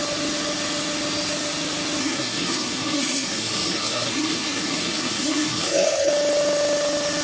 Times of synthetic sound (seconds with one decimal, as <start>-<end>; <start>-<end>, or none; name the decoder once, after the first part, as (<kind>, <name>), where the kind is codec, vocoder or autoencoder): 2.0-6.1 (codec, SNAC)